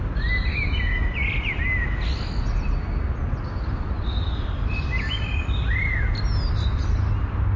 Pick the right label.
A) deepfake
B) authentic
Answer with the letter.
B